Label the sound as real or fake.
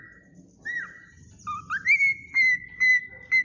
real